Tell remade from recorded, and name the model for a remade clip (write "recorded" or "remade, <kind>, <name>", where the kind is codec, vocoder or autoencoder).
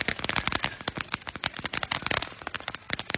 recorded